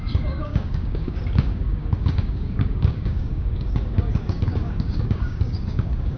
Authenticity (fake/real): fake